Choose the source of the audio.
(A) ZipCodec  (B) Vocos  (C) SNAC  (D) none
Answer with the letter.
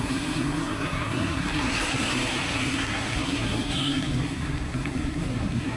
C